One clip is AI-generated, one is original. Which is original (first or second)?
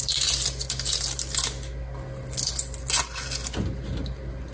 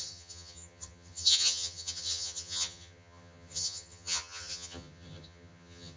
first